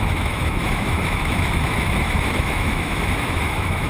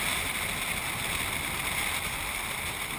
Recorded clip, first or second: second